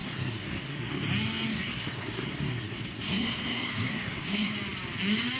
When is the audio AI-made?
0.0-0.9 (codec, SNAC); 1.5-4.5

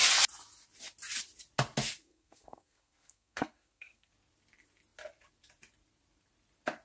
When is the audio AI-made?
2.0-4.1 (codec, SNAC)